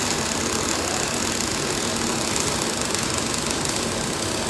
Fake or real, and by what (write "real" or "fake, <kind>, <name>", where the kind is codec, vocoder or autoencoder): real